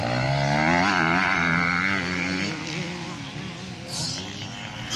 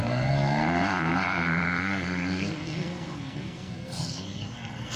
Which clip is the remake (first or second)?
second